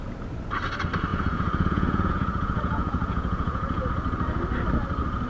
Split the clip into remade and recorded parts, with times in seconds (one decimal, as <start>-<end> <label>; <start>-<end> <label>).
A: 0.0-1.1 recorded; 1.1-3.9 remade; 3.9-5.3 recorded